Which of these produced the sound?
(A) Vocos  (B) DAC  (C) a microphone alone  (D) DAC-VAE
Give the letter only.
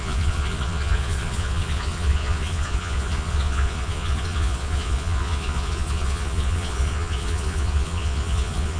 A